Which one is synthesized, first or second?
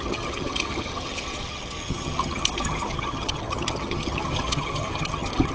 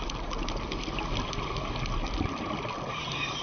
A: first